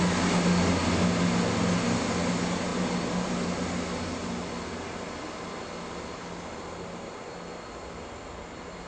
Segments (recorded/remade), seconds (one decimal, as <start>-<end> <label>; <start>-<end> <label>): 0.0-8.9 recorded